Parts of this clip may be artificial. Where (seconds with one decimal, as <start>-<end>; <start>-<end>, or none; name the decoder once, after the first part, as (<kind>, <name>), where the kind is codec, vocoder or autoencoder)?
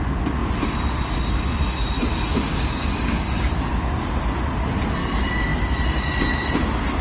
2.3-3.3 (codec, DAC)